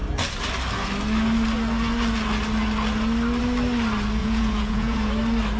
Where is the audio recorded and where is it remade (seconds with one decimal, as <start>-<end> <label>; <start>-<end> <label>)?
0.0-4.2 recorded; 4.2-5.1 remade; 5.1-5.6 recorded